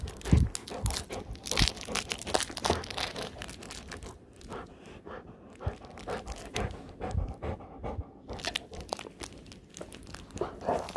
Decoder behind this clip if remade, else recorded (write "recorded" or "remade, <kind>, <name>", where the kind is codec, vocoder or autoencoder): recorded